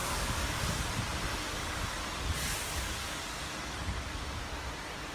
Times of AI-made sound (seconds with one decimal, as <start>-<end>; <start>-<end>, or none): 0.0-0.6; 1.3-4.4